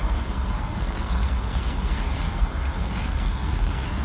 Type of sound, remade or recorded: remade